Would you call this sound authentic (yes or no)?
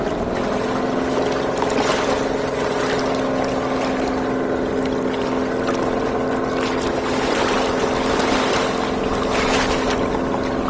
yes